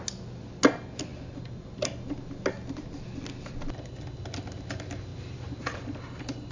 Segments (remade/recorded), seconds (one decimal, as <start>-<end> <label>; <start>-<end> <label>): 0.0-6.5 recorded